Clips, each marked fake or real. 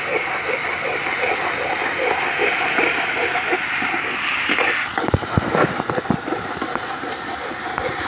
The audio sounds real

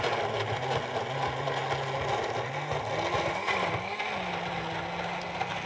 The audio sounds real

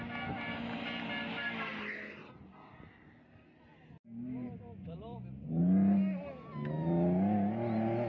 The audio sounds real